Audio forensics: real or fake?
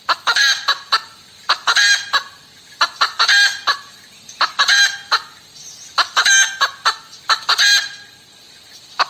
real